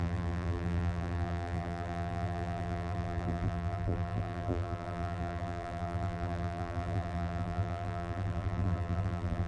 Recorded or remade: remade